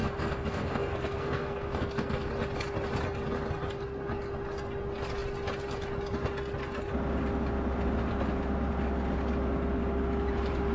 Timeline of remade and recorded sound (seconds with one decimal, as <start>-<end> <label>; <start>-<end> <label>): 0.0-2.3 remade; 2.3-10.7 recorded